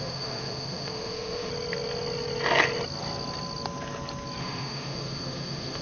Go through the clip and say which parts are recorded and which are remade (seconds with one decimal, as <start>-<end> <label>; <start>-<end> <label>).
0.0-1.5 remade; 1.5-4.4 recorded; 4.4-5.8 remade